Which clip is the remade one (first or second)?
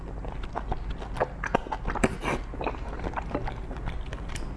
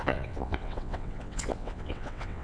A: second